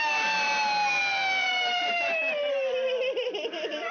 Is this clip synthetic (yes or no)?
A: yes